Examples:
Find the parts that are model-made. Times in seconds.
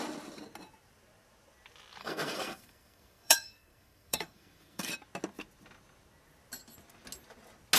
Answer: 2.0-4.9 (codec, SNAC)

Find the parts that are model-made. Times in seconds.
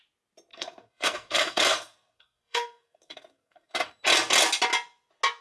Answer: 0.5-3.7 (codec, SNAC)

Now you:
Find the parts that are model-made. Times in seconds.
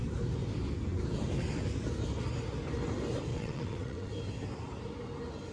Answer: 3.3-4.1 (vocoder, WaveNeXt)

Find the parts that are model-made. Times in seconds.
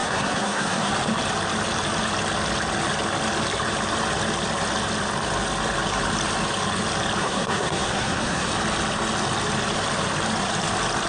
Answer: 0.0-0.9 (codec, SNAC); 7.2-8.5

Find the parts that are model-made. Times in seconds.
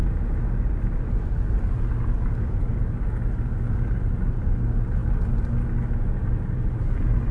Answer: none